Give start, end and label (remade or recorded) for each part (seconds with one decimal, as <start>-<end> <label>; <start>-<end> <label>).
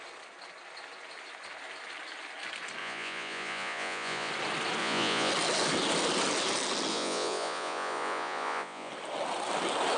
0.0-2.8 recorded; 2.8-4.3 remade; 4.3-4.8 recorded; 4.8-5.3 remade; 5.3-6.9 recorded; 6.9-8.9 remade; 8.9-10.0 recorded